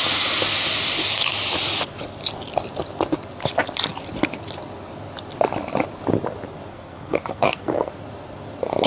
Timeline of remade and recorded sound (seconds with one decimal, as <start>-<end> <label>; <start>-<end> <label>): 0.0-6.7 recorded; 6.7-7.9 remade; 7.9-8.9 recorded